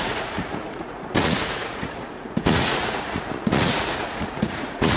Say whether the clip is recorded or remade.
remade